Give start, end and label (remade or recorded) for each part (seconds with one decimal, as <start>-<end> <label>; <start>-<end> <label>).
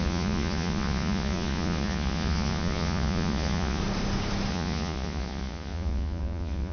0.0-3.8 remade; 3.8-4.5 recorded; 4.5-6.7 remade